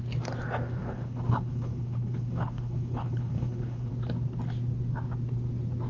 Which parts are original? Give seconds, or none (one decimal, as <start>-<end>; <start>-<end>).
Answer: 0.0-0.8; 3.9-5.9